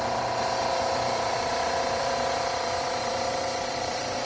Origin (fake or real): fake